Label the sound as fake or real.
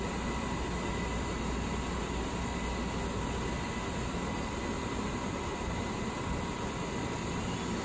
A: real